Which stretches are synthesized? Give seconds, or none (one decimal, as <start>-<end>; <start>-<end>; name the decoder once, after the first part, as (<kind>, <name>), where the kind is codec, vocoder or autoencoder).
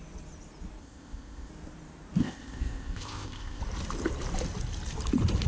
0.8-1.5 (codec, ZipCodec); 2.2-3.6